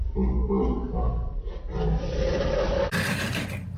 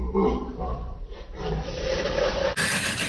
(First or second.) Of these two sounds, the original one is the first